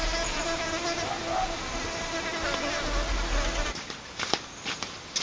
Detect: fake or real real